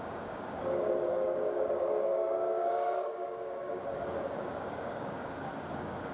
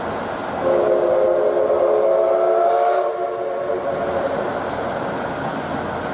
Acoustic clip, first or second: second